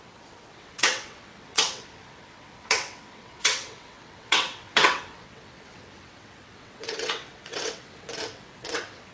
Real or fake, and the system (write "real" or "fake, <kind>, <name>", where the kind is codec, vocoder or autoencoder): fake, vocoder, WaveNeXt